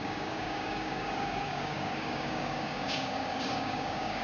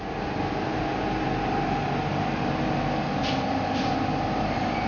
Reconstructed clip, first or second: first